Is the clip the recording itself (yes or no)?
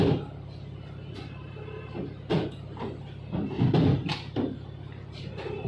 yes